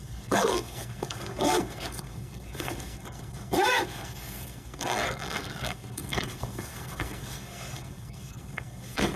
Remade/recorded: remade